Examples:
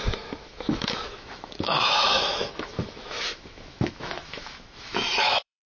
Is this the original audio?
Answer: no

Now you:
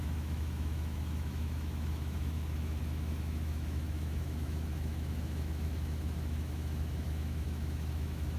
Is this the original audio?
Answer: no